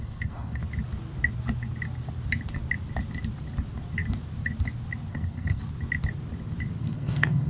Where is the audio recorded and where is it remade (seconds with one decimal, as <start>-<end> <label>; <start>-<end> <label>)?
0.0-0.6 remade; 0.6-5.1 recorded; 5.1-5.6 remade; 5.6-6.8 recorded; 6.8-7.5 remade